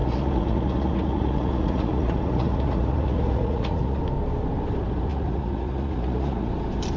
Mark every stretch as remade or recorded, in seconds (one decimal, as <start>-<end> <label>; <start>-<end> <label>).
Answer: 0.0-4.0 remade; 4.0-5.1 recorded; 5.1-6.5 remade; 6.5-7.0 recorded